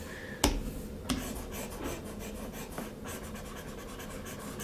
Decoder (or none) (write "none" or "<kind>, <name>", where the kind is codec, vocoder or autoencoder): none